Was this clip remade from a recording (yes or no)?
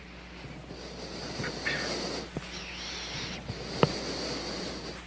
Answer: no